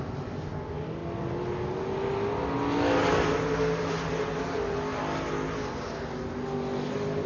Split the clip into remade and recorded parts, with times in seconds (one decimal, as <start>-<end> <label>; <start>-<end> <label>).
0.0-7.3 recorded